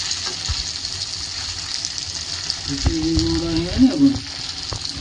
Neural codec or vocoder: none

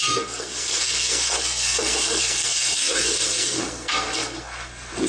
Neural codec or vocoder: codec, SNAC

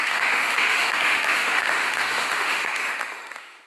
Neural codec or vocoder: autoencoder, DAC-VAE